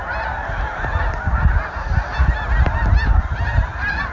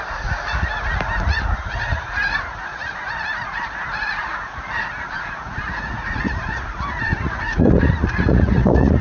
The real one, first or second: first